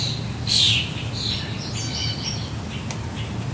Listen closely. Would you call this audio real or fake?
real